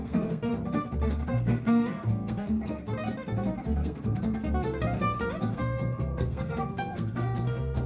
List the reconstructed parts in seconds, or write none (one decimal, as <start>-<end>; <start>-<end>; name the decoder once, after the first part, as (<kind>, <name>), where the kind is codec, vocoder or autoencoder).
0.0-0.5 (codec, SNAC); 1.1-2.9; 3.6-4.4; 5.5-7.9